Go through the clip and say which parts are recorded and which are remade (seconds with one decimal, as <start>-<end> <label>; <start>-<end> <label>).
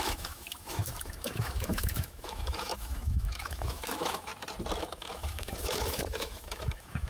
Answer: 0.0-4.3 remade; 4.3-4.8 recorded; 4.8-7.1 remade